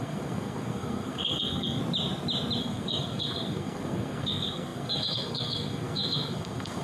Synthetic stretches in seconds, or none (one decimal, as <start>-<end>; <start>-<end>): 0.0-1.8; 2.6-6.8